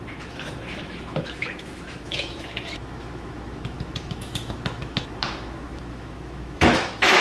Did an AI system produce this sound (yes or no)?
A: yes